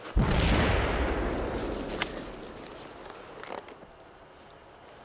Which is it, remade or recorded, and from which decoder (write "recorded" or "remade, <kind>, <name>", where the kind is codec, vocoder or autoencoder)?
recorded